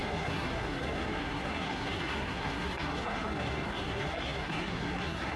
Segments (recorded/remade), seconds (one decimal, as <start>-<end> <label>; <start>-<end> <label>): 0.0-5.4 remade